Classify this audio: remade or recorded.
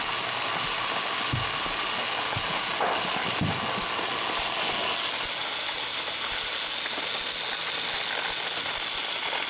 recorded